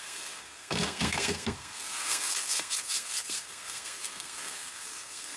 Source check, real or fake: fake